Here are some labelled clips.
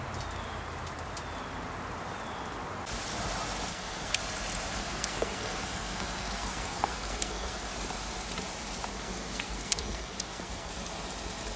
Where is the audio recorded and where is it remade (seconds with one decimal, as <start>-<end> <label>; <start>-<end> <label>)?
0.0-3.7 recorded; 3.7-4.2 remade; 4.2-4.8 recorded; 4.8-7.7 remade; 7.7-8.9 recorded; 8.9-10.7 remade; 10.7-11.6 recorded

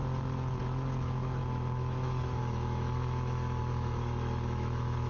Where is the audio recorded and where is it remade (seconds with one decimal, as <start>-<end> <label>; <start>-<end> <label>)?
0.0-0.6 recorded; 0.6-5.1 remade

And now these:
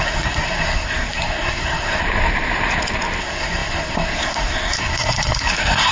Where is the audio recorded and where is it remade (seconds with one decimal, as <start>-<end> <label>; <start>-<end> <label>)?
0.0-2.0 remade; 2.0-3.2 recorded; 3.2-5.9 remade

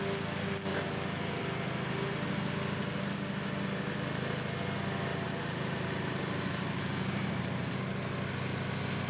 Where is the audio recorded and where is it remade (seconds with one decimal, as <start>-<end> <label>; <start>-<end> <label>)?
0.0-0.7 recorded; 0.7-1.4 remade; 1.4-5.1 recorded; 5.1-7.7 remade; 7.7-9.1 recorded

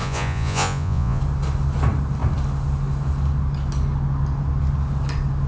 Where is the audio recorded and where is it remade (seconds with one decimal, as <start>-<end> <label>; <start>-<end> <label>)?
0.0-1.2 remade; 1.2-5.5 recorded

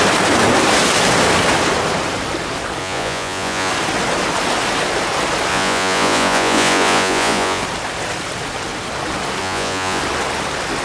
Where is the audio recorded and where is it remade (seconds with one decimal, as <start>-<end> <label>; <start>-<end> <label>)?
0.0-2.8 recorded; 2.8-3.7 remade; 3.7-5.5 recorded; 5.5-7.6 remade; 7.6-9.4 recorded; 9.4-10.0 remade; 10.0-10.8 recorded

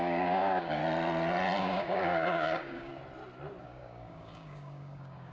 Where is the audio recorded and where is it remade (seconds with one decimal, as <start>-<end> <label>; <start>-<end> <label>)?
0.0-0.8 remade; 0.8-1.6 recorded; 1.6-2.9 remade; 2.9-3.6 recorded; 3.6-5.3 remade

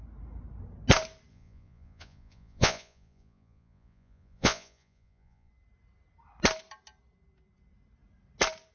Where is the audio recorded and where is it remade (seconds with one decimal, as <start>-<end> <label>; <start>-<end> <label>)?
0.0-1.3 recorded; 1.3-5.5 remade; 5.5-8.7 recorded